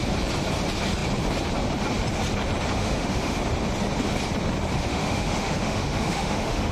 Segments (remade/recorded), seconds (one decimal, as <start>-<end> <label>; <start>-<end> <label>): 0.0-2.8 recorded; 2.8-3.4 remade; 3.4-4.9 recorded; 4.9-6.7 remade